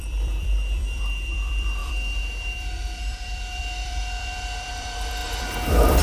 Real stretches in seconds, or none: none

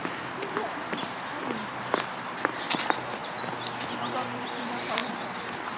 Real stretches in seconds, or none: 0.0-5.0

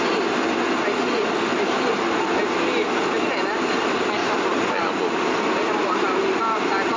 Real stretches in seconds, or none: 0.0-1.5; 3.2-4.2; 5.0-5.8; 6.4-7.0

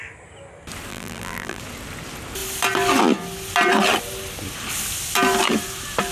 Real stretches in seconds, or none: 0.0-0.9; 1.6-6.1

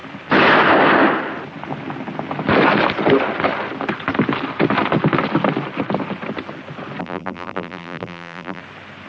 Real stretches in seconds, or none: 0.0-7.0; 8.6-9.1

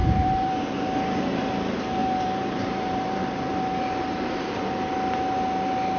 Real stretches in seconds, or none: 1.5-2.0; 3.6-6.0

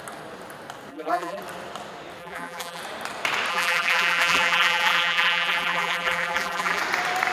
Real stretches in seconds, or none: 0.0-0.9; 1.4-2.2; 2.8-3.5; 6.8-7.3